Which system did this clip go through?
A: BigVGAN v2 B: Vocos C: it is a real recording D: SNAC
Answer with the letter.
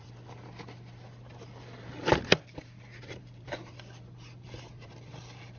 A